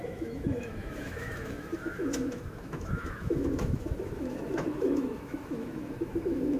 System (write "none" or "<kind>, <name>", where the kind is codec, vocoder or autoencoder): autoencoder, DAC-VAE